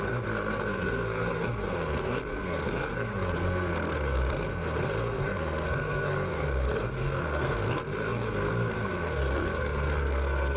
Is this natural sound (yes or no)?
no